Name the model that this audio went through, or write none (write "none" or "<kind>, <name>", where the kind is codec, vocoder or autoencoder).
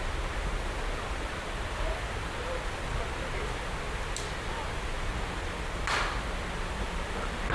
none